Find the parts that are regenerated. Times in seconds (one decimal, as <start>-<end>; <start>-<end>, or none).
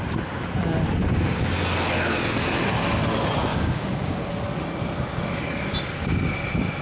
3.5-4.3